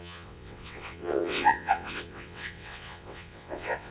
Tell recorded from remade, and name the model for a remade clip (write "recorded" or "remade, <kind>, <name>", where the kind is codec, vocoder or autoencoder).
remade, vocoder, WaveNeXt